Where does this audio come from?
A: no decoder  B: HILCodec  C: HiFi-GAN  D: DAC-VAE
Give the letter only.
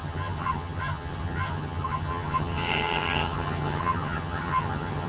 C